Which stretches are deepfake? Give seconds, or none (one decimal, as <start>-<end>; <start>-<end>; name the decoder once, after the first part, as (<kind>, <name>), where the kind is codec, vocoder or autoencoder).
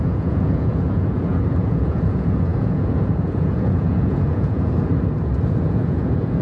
0.0-4.9 (vocoder, Vocos); 5.5-6.4